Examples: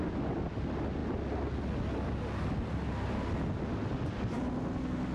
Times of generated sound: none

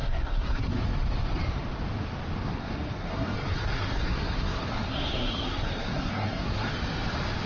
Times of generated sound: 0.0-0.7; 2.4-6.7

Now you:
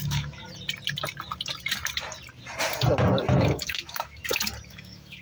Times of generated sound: 0.0-0.4; 3.4-4.2; 4.7-5.2